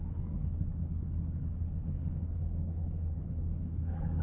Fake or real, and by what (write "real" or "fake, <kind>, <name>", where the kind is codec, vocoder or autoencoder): fake, codec, HILCodec